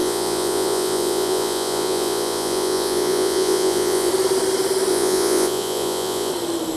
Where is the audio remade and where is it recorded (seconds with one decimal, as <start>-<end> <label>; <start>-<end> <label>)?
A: 0.0-4.1 remade; 4.1-4.9 recorded; 4.9-6.3 remade; 6.3-6.8 recorded